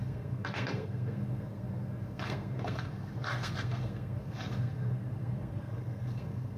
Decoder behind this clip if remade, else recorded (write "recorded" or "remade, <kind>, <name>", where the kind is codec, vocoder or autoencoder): remade, codec, SNAC